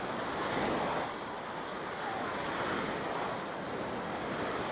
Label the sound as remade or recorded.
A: recorded